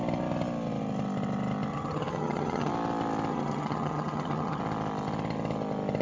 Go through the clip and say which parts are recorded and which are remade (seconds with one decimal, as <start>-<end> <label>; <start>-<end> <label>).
0.0-1.7 recorded; 1.7-2.7 remade; 2.7-3.3 recorded; 3.3-4.6 remade; 4.6-6.0 recorded